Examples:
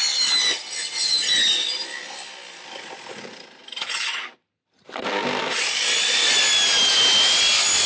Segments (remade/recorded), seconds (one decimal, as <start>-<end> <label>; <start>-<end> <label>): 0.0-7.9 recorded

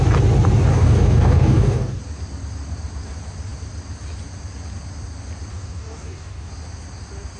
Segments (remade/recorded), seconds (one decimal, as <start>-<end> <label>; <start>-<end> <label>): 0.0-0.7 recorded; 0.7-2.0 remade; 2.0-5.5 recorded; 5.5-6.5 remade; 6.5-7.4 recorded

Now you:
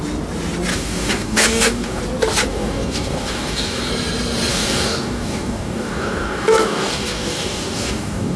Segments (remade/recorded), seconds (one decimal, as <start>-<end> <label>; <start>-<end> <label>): 0.0-0.7 recorded; 0.7-2.0 remade; 2.0-2.5 recorded; 2.5-3.9 remade; 3.9-4.5 recorded; 4.5-8.4 remade